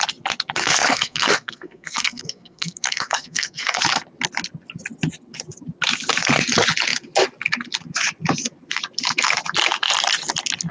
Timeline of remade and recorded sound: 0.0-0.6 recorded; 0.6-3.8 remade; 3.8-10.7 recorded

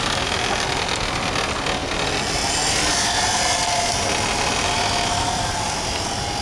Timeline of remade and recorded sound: 0.0-6.4 recorded

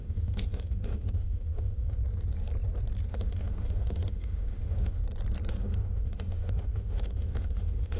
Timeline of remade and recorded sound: 0.0-2.0 remade; 2.0-3.1 recorded; 3.1-5.0 remade; 5.0-5.5 recorded; 5.5-8.0 remade

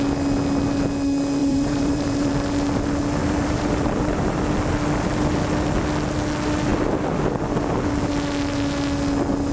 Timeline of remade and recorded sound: 0.0-1.4 recorded; 1.4-2.3 remade; 2.3-3.2 recorded; 3.2-4.2 remade; 4.2-9.5 recorded